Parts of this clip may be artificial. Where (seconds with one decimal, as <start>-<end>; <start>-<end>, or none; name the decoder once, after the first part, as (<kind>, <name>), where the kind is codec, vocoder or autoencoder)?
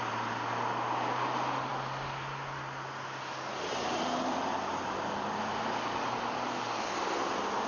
none